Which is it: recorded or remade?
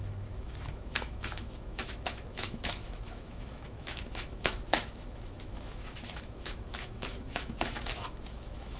remade